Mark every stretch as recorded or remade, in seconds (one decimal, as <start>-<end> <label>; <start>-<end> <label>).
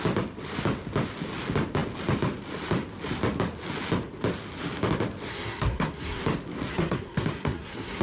0.0-5.3 recorded; 5.3-6.2 remade; 6.2-6.7 recorded; 6.7-8.0 remade